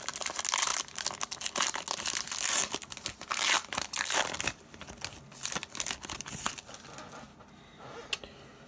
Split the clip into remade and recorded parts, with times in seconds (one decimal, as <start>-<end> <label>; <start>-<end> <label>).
0.0-8.7 recorded